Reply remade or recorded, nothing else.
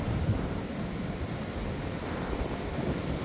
recorded